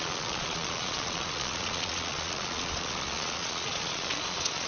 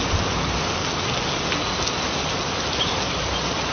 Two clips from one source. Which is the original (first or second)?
second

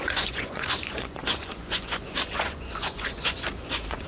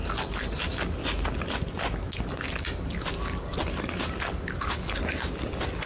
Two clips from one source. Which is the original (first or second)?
second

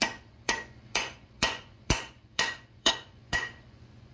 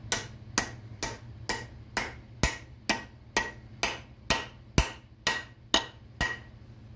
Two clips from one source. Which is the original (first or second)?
second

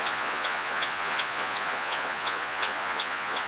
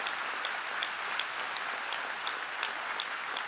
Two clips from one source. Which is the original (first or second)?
second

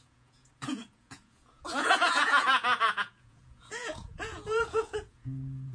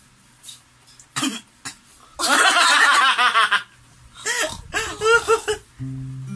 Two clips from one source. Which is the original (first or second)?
second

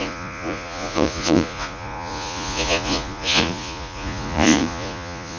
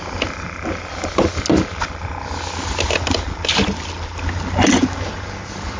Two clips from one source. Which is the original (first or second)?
second